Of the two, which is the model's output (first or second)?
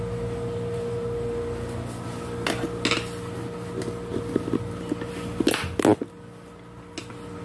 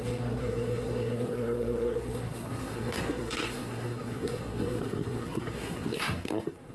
second